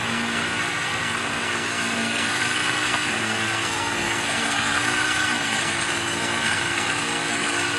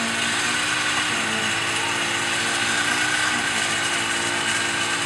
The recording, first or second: second